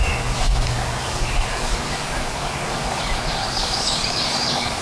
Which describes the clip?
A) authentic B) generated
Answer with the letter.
B